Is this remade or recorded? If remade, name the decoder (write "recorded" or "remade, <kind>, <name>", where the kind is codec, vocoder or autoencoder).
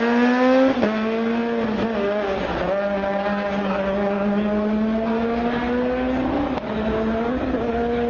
recorded